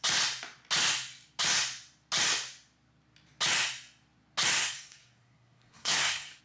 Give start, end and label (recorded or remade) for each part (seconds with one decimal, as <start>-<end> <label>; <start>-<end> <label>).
0.0-4.6 recorded; 4.6-6.4 remade